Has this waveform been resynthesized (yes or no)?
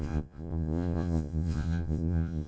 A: yes